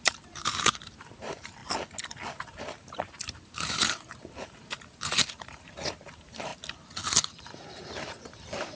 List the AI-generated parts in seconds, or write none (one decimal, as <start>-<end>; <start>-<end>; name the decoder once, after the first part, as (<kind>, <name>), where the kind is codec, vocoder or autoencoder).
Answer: 0.0-1.6 (vocoder, BigVGAN v2); 2.4-6.5; 7.4-8.7